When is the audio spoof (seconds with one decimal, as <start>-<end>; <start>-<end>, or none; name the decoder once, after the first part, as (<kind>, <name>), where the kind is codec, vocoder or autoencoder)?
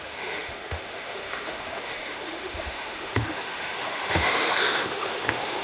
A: 0.0-5.6 (autoencoder, DAC-VAE)